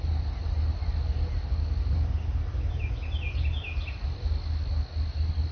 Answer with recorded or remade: recorded